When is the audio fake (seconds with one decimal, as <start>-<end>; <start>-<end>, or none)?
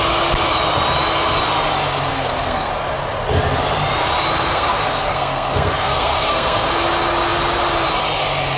2.1-2.7; 4.5-6.7